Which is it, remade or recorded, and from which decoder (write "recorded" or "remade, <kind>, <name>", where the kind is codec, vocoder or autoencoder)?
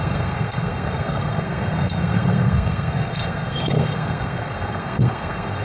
remade, codec, SNAC